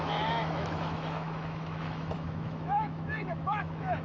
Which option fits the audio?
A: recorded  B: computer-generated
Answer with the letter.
B